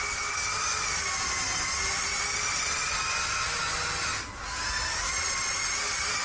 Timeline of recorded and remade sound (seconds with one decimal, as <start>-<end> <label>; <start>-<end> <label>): 0.0-6.2 recorded